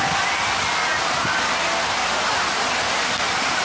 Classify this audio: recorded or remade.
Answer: recorded